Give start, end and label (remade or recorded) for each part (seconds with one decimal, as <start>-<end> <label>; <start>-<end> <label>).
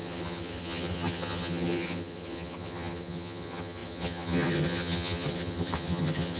0.0-6.4 remade